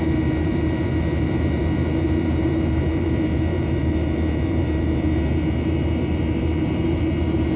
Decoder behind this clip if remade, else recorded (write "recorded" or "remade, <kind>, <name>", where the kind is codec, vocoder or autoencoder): remade, vocoder, BigVGAN v2